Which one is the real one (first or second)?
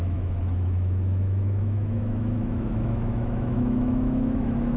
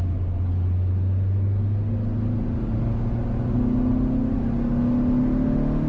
second